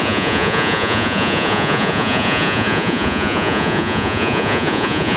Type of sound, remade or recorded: remade